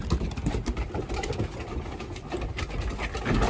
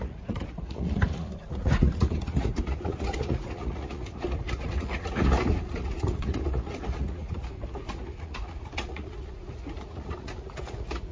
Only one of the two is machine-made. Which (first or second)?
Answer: second